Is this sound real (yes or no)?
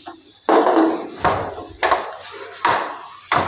yes